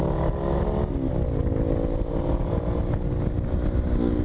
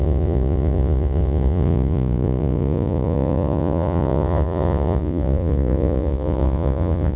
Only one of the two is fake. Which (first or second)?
second